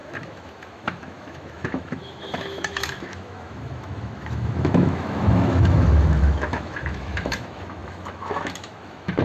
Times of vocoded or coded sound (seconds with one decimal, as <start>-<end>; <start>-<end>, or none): 0.0-9.2